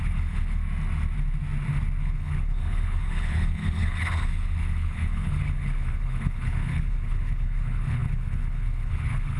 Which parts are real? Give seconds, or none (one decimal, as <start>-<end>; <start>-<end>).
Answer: 0.6-2.0